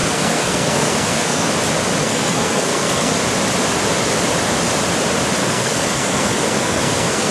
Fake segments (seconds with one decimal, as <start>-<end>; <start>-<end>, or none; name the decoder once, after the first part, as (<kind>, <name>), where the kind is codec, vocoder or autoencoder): 0.0-1.5 (codec, SNAC); 2.0-3.1; 5.4-7.3